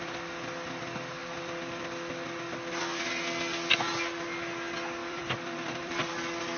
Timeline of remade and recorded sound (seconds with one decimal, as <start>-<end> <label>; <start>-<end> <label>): 0.0-5.0 recorded; 5.0-6.1 remade; 6.1-6.6 recorded